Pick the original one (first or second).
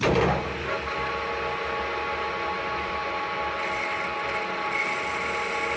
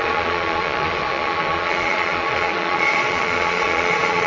first